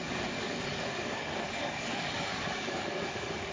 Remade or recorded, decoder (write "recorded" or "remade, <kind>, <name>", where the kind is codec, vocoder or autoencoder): remade, codec, DAC